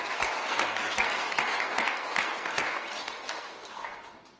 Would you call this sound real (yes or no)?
no